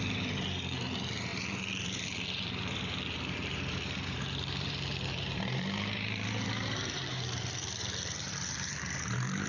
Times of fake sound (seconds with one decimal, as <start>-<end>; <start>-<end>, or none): 0.0-9.5